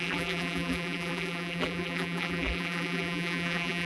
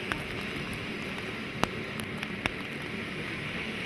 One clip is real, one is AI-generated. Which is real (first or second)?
second